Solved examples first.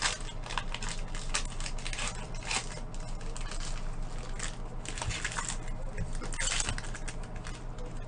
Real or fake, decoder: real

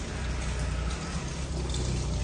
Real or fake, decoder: real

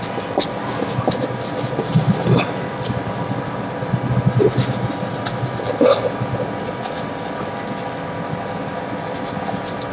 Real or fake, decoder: real